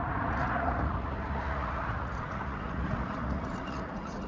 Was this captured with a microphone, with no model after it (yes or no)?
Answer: no